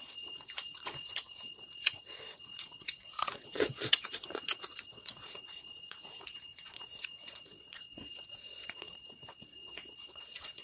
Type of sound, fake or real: fake